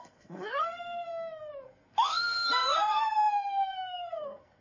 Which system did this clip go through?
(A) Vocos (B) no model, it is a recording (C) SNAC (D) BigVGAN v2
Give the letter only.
C